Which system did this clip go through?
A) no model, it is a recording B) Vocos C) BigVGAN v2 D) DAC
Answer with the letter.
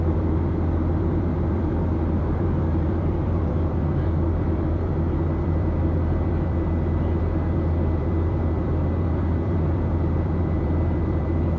C